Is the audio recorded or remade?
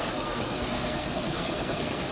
remade